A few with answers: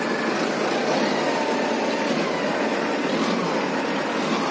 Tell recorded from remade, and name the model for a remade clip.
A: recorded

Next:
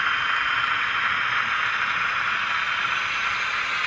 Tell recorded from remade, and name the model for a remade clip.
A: recorded